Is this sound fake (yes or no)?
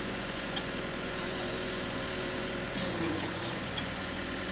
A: yes